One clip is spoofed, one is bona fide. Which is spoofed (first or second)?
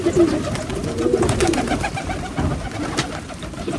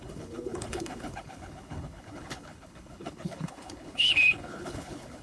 second